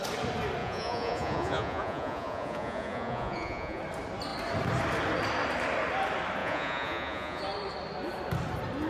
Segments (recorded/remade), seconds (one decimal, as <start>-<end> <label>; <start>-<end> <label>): 0.0-0.6 recorded; 0.6-3.8 remade; 3.8-6.4 recorded; 6.4-7.4 remade; 7.4-8.9 recorded